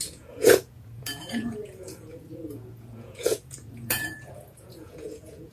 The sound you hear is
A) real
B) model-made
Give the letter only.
B